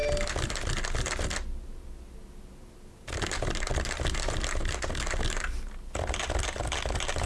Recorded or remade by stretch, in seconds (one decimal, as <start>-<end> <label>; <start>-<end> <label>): 0.0-7.3 recorded